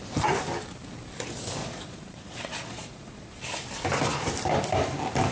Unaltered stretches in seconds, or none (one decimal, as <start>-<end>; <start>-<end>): 0.0-1.6; 3.4-5.3